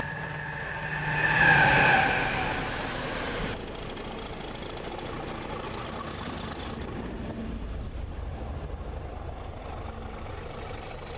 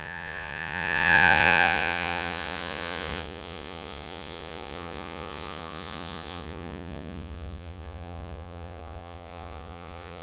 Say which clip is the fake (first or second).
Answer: second